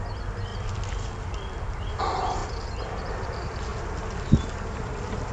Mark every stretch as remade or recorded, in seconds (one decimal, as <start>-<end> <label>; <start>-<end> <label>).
0.0-5.3 recorded